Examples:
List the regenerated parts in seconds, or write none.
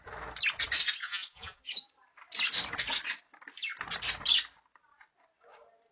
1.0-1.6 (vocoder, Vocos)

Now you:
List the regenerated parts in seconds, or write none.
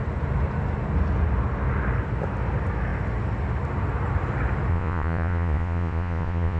4.7-6.6 (vocoder, Vocos)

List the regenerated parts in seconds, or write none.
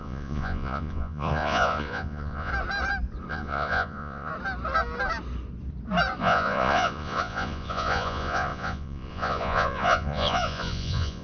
0.0-2.5 (vocoder, Vocos); 3.3-4.3; 6.2-11.2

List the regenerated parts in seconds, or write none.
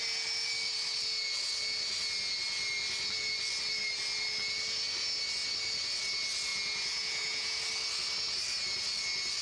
6.5-7.6 (vocoder, Vocos)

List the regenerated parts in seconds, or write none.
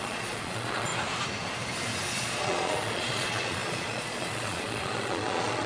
0.0-0.9 (vocoder, Vocos); 2.1-5.7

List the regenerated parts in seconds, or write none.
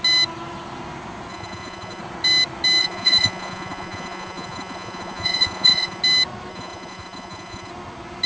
1.3-2.0 (vocoder, Vocos); 2.8-6.0; 6.5-7.7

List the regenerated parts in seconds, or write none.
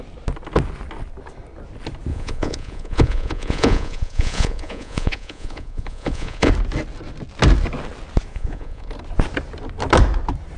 2.1-6.5 (vocoder, Vocos); 8.3-8.9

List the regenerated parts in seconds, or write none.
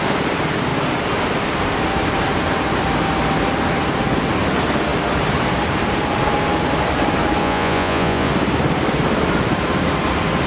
7.4-8.3 (vocoder, Vocos)